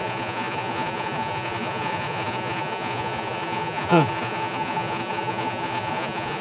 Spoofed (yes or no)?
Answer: yes